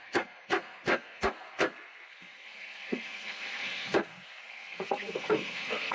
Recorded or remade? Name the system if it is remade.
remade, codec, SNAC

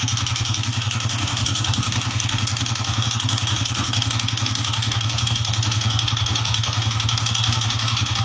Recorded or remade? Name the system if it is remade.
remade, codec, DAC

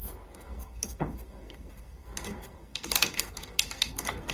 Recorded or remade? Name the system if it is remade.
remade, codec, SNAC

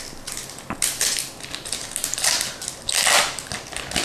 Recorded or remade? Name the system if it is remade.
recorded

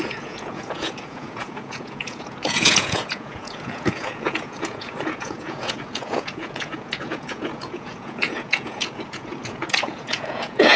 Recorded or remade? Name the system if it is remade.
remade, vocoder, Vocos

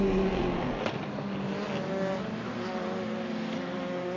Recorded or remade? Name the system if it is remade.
recorded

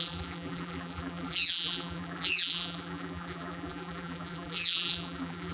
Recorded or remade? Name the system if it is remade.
remade, vocoder, BigVGAN v2